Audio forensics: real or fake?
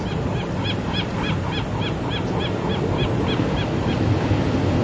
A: real